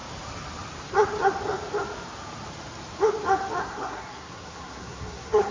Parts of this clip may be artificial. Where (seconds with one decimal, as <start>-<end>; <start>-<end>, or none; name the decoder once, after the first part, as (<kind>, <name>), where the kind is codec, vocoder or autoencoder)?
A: 3.6-5.5 (codec, SNAC)